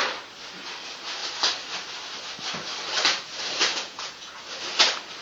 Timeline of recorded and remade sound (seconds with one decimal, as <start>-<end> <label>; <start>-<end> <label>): 0.0-3.7 recorded; 3.7-4.4 remade; 4.4-5.2 recorded